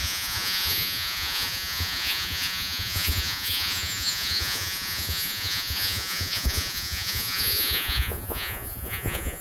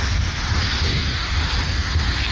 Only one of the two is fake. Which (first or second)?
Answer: first